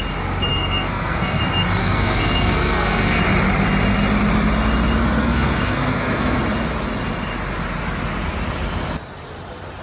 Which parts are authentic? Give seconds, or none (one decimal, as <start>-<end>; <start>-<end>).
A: 0.0-0.5; 1.4-1.8; 3.2-5.2; 6.4-9.8